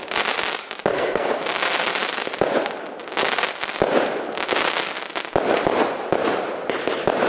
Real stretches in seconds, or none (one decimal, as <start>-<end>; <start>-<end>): 0.0-0.9; 1.4-7.3